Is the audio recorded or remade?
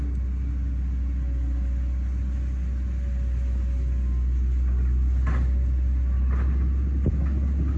recorded